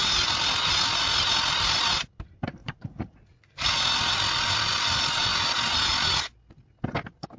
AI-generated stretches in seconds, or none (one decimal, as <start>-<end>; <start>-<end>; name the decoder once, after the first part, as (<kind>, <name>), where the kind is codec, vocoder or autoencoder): 2.6-3.7 (vocoder, Vocos)